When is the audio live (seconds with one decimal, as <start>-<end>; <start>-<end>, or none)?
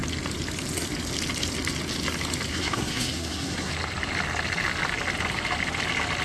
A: 0.0-2.5; 3.7-6.2